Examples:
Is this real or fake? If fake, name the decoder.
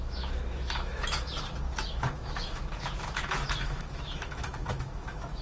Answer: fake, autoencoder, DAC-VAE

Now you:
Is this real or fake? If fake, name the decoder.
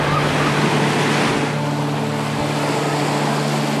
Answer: real